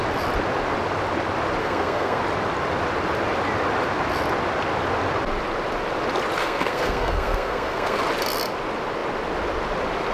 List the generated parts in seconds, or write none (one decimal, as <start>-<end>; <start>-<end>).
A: 1.6-2.2; 6.4-8.0